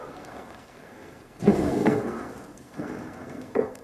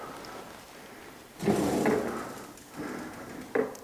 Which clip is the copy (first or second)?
first